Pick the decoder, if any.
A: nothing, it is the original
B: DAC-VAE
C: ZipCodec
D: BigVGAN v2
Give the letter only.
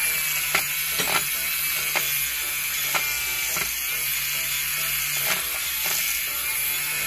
A